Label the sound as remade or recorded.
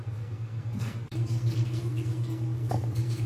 remade